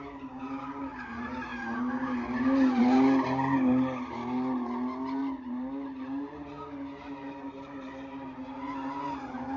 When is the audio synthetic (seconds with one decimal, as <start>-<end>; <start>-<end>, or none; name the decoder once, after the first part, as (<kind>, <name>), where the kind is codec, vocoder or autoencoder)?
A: none